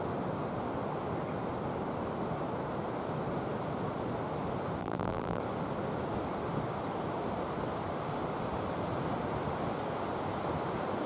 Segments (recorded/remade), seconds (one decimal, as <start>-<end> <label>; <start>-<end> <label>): 0.0-4.8 recorded; 4.8-5.4 remade; 5.4-11.1 recorded